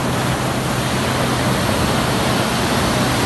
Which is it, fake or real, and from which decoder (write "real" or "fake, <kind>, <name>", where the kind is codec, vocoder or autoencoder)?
real